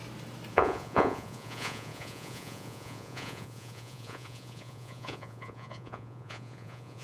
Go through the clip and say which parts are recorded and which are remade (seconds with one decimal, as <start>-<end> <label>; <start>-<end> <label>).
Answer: 0.0-0.5 recorded; 0.5-7.0 remade